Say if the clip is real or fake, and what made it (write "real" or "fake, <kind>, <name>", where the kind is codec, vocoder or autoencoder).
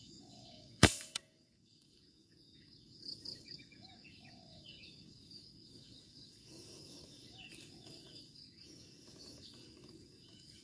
fake, codec, DAC